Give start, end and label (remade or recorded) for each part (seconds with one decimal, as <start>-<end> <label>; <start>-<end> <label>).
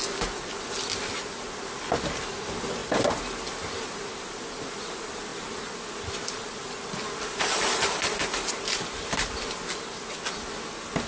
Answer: 0.0-11.1 recorded